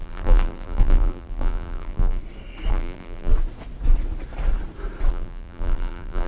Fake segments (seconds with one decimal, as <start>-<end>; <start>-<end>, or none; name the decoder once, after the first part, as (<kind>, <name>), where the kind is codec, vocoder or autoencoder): 0.0-2.2 (vocoder, BigVGAN v2); 2.7-3.3; 5.1-6.3